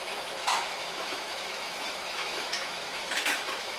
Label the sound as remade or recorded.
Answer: remade